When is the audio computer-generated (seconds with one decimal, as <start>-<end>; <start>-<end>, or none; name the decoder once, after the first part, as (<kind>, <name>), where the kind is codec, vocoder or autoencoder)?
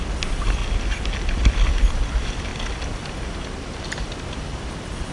0.0-0.6 (vocoder, BigVGAN v2); 1.2-2.5; 3.2-5.1